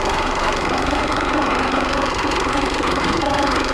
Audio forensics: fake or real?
fake